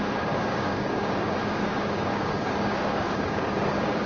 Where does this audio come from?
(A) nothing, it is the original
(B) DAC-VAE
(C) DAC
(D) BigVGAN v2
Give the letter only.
C